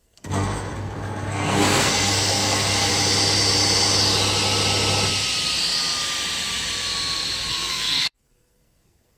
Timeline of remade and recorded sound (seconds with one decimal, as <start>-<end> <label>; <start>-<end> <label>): 0.0-2.9 remade; 2.9-7.5 recorded; 7.5-9.2 remade